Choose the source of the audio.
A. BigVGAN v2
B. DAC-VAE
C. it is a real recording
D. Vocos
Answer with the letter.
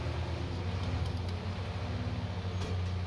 C